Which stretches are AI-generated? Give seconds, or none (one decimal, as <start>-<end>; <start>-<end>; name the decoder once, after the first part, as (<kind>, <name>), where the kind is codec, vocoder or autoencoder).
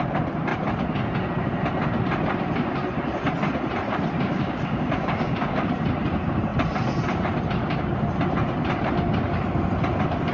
4.3-5.7 (codec, DAC)